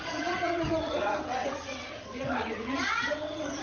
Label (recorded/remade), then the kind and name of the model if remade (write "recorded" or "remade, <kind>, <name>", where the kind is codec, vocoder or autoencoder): remade, vocoder, WaveNeXt